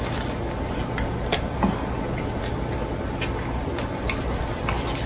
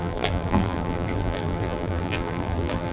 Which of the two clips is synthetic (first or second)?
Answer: second